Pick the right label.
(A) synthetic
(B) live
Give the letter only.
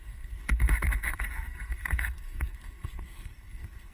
A